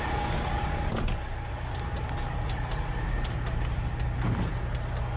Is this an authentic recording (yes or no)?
yes